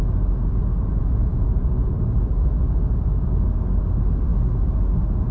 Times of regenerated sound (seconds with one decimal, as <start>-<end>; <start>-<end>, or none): 0.9-1.9